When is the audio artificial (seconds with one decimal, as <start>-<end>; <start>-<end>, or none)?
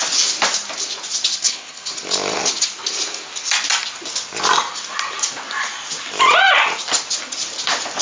1.3-1.9